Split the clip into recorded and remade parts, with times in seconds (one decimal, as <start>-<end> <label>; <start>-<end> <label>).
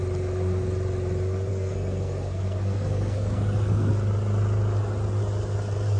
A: 0.0-1.5 recorded; 1.5-3.9 remade; 3.9-6.0 recorded